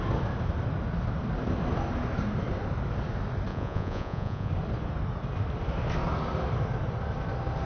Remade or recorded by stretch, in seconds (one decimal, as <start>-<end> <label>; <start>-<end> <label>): 0.0-3.5 recorded; 3.5-4.5 remade; 4.5-7.7 recorded